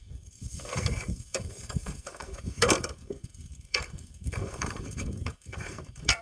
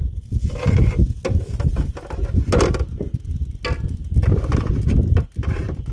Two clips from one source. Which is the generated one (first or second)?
first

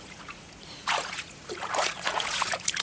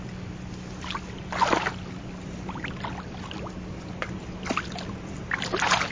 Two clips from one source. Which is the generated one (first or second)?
first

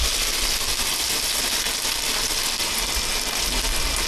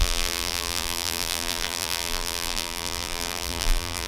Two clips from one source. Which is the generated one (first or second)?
second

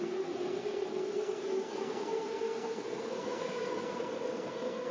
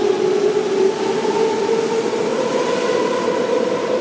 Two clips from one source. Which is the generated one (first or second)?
first